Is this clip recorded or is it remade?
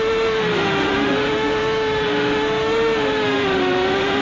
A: remade